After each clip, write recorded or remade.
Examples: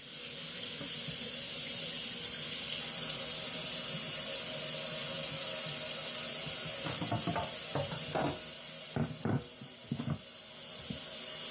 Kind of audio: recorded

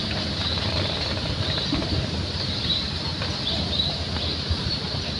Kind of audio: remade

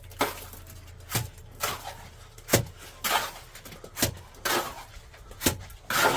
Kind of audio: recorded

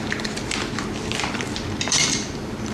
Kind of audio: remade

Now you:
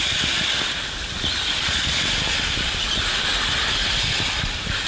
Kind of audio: remade